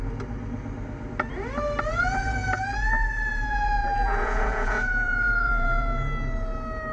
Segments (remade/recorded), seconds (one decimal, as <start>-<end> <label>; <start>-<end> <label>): 0.0-1.9 recorded; 1.9-6.0 remade; 6.0-6.9 recorded